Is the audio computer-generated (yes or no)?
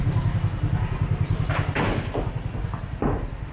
no